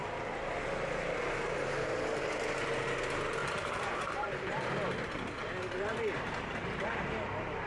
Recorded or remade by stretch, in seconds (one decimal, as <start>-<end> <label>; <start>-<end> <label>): 0.0-3.4 recorded; 3.4-4.7 remade; 4.7-7.7 recorded

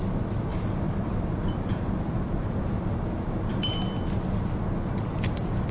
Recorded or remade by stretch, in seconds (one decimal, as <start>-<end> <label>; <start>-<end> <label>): 0.0-0.5 recorded; 0.5-3.9 remade; 3.9-5.7 recorded

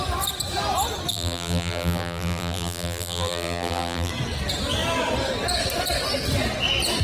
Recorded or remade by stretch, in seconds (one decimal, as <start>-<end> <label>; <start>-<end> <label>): 0.0-1.1 recorded; 1.1-4.1 remade; 4.1-7.0 recorded

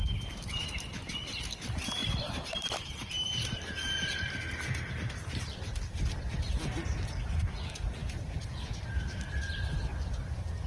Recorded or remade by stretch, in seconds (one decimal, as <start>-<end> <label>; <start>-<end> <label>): 0.0-2.0 recorded; 2.0-2.6 remade; 2.6-10.7 recorded

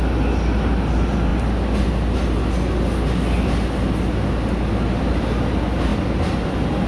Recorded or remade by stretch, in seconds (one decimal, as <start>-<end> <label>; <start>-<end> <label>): 0.0-6.9 recorded

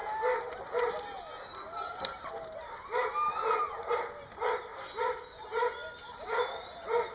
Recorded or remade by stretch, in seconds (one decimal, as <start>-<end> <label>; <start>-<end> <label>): 0.0-7.1 recorded